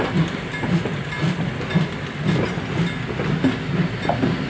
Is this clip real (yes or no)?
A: yes